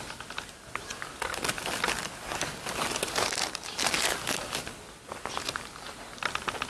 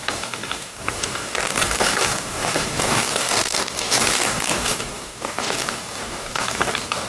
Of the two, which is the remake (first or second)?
second